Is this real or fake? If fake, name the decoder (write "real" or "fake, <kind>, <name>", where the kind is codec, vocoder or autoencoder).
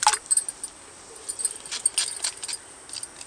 real